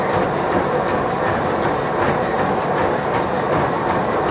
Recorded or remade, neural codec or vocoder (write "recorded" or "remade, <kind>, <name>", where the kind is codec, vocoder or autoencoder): recorded